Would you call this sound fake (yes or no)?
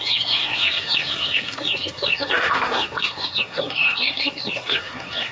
yes